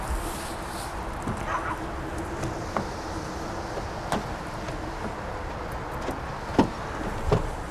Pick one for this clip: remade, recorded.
recorded